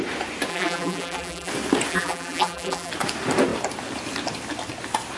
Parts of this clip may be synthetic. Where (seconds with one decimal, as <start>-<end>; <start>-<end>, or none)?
0.5-1.5; 1.9-2.9